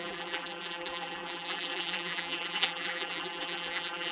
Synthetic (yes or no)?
yes